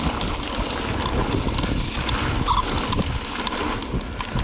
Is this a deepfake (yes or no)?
no